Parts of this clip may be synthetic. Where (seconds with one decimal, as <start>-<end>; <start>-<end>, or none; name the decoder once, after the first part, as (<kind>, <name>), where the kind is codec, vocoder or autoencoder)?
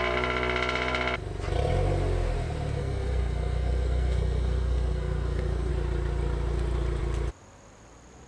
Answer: 2.8-5.7 (codec, SNAC)